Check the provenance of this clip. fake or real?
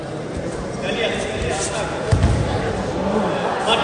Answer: real